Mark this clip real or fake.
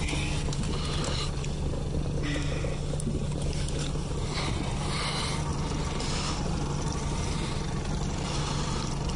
real